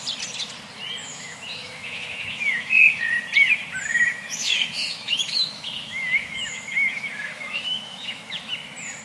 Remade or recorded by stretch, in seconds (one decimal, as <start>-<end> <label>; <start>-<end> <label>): 0.0-1.0 recorded; 1.0-3.0 remade; 3.0-3.9 recorded; 3.9-8.5 remade; 8.5-9.0 recorded